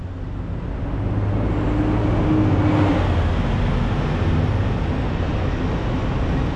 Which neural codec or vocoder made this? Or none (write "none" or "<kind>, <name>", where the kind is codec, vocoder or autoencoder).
none